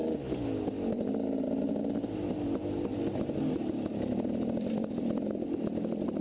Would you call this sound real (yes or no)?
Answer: yes